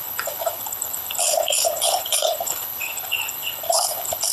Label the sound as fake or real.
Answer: fake